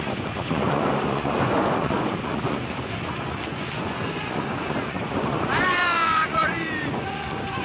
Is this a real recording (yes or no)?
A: no